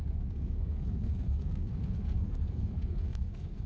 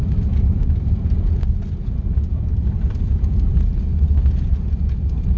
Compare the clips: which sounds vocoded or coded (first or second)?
first